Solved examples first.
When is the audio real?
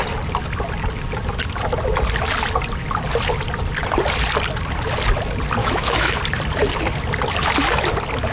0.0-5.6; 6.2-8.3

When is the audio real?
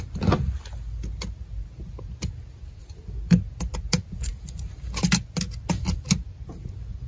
0.0-7.1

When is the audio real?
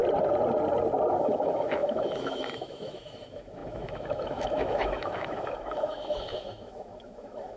0.0-1.2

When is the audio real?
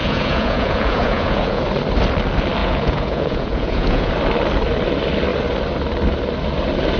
1.6-2.6; 4.1-7.0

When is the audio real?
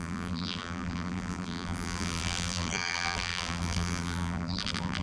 none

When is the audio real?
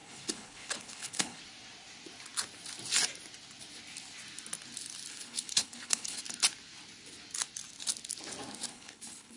1.4-5.1; 6.2-8.7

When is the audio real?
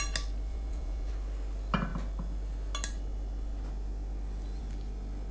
0.0-0.5; 1.1-5.3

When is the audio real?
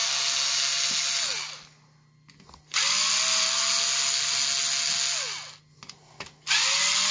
0.0-7.1